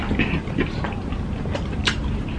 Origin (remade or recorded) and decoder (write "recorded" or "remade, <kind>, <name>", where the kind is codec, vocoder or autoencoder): recorded